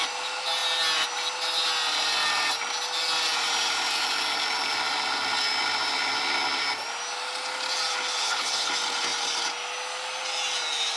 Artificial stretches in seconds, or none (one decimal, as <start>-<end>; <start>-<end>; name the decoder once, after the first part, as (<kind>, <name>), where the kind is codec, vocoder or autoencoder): 8.2-8.7 (codec, HILCodec)